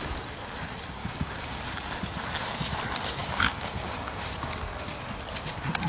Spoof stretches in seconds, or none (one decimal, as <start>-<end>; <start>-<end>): 1.0-1.6; 3.2-4.2